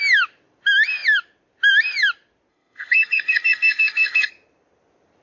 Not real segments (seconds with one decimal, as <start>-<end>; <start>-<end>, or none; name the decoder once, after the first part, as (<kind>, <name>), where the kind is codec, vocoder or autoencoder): 2.5-4.3 (codec, SNAC)